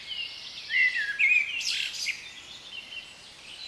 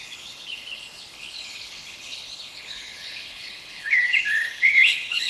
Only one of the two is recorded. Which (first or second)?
first